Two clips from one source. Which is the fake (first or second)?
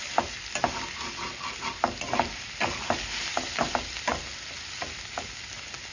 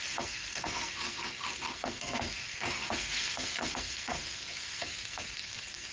second